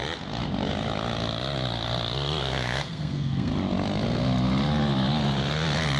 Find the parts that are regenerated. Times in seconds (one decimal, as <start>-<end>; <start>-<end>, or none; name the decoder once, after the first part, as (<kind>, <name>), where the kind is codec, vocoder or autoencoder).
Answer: 2.4-3.5 (codec, SNAC)

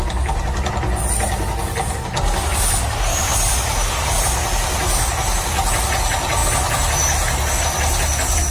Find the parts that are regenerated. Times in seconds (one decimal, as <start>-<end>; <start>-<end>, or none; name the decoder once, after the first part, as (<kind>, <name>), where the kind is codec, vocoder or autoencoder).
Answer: none

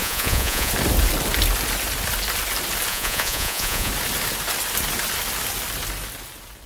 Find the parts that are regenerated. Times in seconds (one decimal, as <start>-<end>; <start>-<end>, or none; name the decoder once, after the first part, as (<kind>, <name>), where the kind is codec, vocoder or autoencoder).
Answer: 0.0-0.7 (vocoder, Vocos); 2.9-3.9

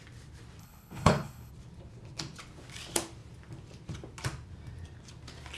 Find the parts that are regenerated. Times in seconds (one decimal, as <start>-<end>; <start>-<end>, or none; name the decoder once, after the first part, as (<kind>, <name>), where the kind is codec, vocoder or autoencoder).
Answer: 0.6-1.5 (codec, HILCodec)